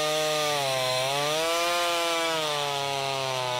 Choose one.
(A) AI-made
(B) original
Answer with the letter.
A